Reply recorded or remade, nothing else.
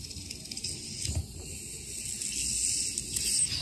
recorded